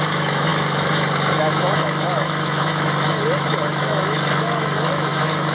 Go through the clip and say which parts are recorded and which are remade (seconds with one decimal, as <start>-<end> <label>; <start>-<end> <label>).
0.0-5.5 remade